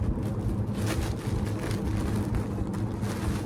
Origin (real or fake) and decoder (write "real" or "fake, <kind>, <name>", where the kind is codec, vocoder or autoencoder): real